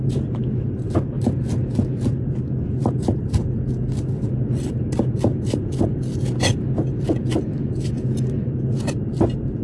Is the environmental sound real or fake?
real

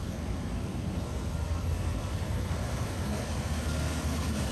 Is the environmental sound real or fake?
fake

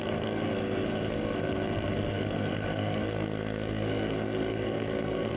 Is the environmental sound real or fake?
fake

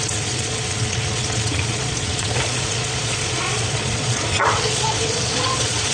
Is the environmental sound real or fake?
fake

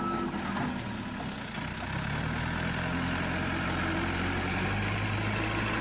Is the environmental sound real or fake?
real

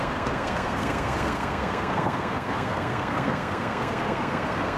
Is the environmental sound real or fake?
fake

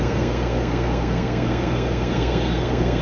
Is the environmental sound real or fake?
fake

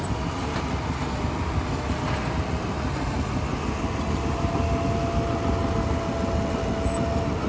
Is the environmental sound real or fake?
real